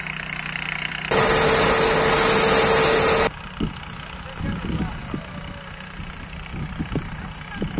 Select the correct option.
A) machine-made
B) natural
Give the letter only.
B